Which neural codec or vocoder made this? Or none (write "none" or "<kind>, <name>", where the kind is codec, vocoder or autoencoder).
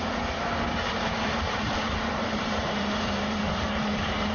vocoder, BigVGAN v2